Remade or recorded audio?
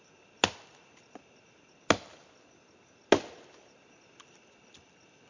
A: recorded